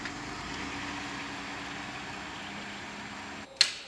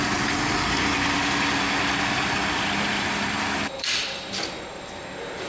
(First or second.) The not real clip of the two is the second